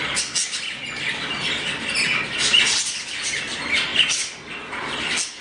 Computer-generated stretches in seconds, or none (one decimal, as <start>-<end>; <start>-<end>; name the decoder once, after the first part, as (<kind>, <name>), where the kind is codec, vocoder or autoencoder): none